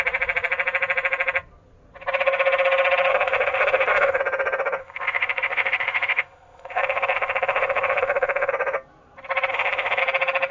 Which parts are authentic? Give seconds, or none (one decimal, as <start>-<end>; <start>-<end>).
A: 0.0-3.1; 4.2-4.8; 8.5-9.5; 10.0-10.5